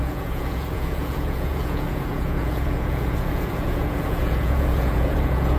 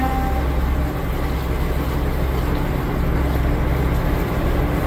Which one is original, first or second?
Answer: second